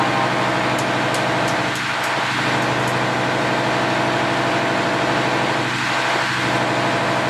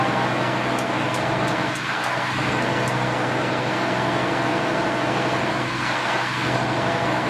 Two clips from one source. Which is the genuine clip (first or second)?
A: first